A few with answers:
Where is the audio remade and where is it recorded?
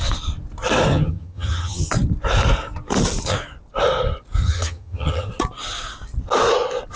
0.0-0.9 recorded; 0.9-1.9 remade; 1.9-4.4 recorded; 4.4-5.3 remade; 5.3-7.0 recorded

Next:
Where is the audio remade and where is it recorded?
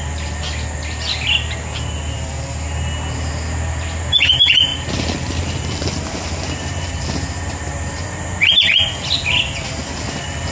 0.0-4.7 recorded; 4.7-7.0 remade; 7.0-10.5 recorded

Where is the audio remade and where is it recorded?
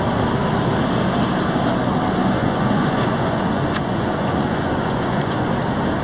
0.0-2.4 recorded; 2.4-5.5 remade; 5.5-6.0 recorded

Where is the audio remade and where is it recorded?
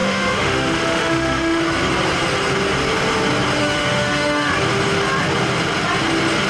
0.0-1.6 remade; 1.6-3.6 recorded; 3.6-4.5 remade; 4.5-6.5 recorded